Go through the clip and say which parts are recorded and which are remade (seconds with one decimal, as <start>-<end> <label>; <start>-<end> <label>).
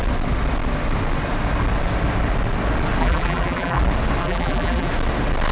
0.0-3.0 recorded; 3.0-3.8 remade; 3.8-4.2 recorded; 4.2-4.9 remade; 4.9-5.5 recorded